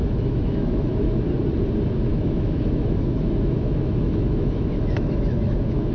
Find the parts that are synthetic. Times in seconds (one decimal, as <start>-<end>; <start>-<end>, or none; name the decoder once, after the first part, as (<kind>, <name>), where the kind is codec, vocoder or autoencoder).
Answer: 0.0-1.1 (autoencoder, DAC-VAE); 2.1-5.9